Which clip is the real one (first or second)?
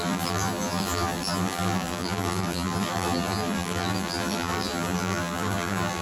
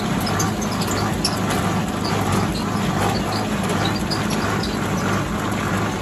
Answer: second